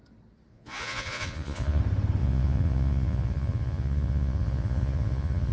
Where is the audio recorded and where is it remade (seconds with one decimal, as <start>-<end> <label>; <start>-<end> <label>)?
0.0-0.5 recorded; 0.5-1.8 remade; 1.8-2.2 recorded; 2.2-5.5 remade